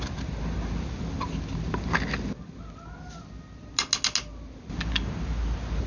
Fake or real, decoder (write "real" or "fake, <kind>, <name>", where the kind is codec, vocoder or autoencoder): real